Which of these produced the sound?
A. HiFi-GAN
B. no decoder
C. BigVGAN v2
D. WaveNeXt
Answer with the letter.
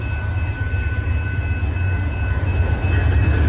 B